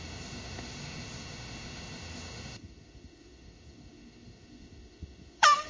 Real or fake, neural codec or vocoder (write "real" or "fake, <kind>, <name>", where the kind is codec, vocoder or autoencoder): fake, autoencoder, DAC-VAE